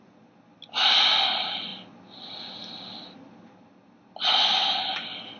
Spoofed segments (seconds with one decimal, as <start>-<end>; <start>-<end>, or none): none